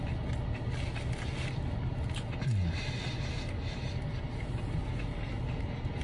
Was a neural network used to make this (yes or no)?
no